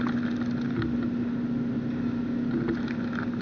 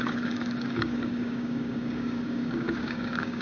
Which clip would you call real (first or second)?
first